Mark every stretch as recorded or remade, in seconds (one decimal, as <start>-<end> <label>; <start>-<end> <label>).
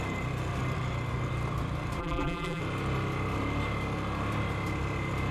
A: 0.0-2.0 recorded; 2.0-2.6 remade; 2.6-5.3 recorded